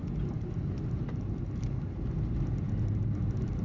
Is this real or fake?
real